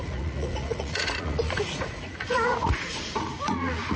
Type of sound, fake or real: fake